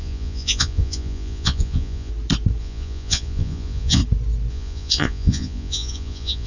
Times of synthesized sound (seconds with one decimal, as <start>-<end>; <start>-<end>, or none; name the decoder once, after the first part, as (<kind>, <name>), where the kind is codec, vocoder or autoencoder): 0.0-2.1 (vocoder, Vocos); 2.6-4.0; 4.5-6.5